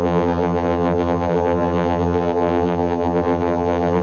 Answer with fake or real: fake